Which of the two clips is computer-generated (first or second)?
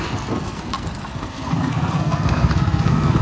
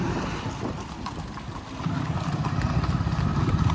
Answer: first